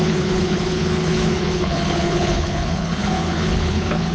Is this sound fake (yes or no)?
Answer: yes